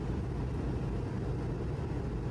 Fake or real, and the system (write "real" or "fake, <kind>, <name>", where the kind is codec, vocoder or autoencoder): real